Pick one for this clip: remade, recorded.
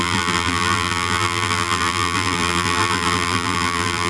remade